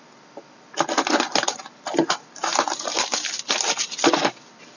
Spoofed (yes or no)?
no